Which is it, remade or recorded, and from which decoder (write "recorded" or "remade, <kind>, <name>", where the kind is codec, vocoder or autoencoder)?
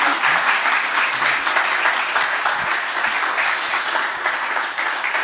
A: recorded